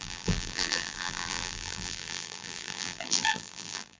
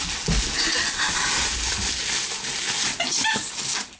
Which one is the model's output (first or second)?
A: first